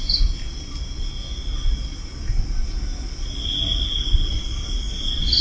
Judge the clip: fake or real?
real